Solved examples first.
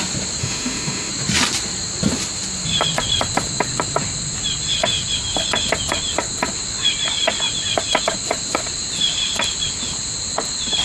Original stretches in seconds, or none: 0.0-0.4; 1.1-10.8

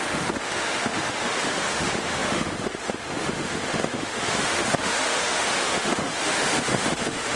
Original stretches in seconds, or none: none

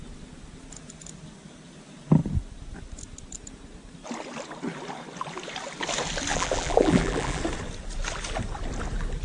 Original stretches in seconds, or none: 0.0-6.3; 7.4-9.2

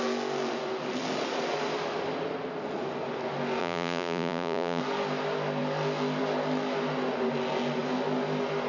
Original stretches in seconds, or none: 0.0-3.6; 4.8-8.7

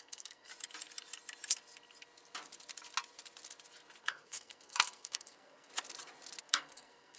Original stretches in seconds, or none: 0.5-4.0; 5.7-6.4

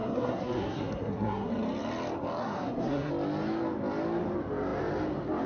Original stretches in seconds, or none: 1.5-2.4; 3.1-5.5

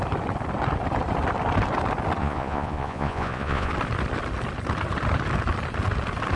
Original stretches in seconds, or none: 0.0-2.2; 3.7-6.4

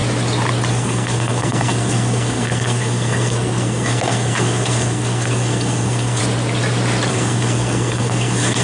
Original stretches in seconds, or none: 0.0-0.7; 6.2-7.1